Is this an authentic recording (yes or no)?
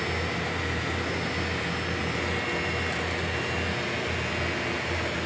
yes